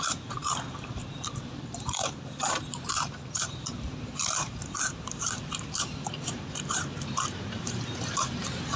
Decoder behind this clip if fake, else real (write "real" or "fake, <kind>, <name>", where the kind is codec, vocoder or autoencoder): fake, vocoder, BigVGAN v2